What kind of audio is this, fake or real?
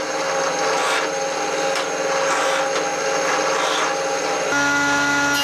real